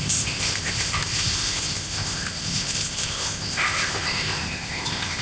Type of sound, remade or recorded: remade